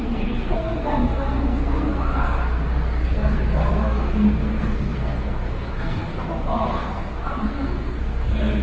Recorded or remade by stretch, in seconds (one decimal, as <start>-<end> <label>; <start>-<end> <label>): 0.0-8.6 remade